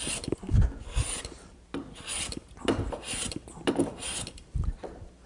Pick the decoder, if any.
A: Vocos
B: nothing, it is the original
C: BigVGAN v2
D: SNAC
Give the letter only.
C